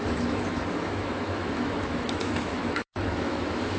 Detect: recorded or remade remade